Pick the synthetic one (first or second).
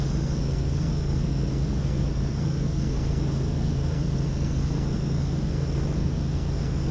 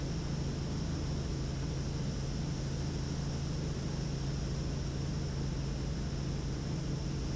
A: first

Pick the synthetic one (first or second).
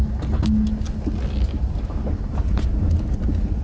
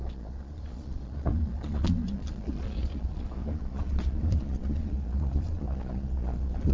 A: second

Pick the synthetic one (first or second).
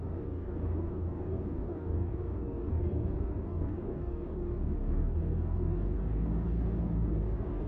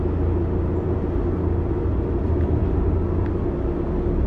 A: first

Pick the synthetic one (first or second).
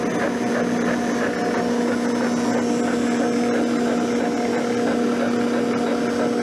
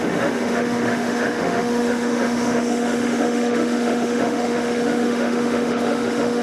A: second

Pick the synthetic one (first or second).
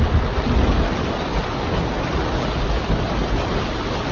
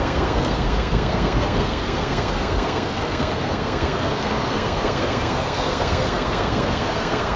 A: second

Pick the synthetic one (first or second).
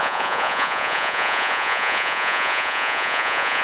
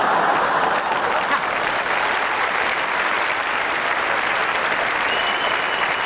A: first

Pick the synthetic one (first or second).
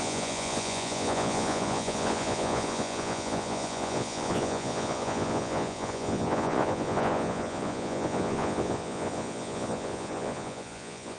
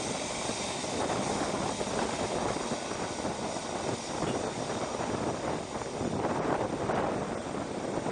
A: first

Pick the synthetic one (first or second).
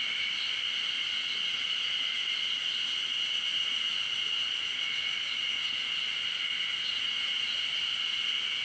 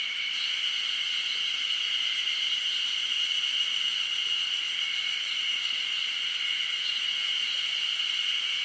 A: second